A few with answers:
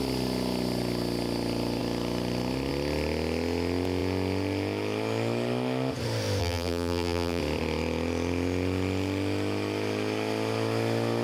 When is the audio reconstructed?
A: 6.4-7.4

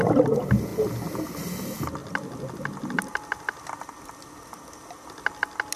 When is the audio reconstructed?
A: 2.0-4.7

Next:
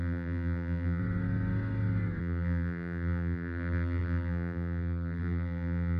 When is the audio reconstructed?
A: 0.0-1.0; 2.2-6.0

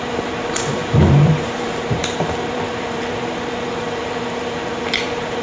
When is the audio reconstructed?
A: 0.0-5.4

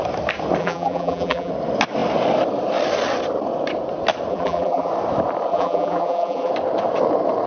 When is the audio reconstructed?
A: 0.6-1.5; 4.3-4.9; 5.5-6.5